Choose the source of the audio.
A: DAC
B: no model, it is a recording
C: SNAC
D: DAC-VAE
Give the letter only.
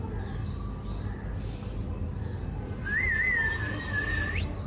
B